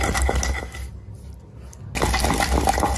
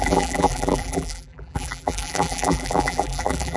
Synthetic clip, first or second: second